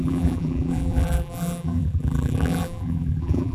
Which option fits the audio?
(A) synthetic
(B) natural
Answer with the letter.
A